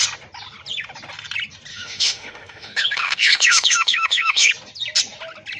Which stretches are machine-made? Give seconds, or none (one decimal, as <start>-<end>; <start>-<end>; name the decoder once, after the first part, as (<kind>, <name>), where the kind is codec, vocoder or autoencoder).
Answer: 1.7-4.5 (autoencoder, DAC-VAE)